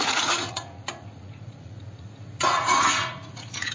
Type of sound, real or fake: fake